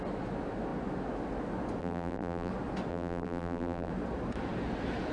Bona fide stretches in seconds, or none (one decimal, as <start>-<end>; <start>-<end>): 0.0-1.8; 2.5-2.9; 3.9-5.1